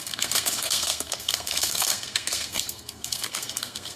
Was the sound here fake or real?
fake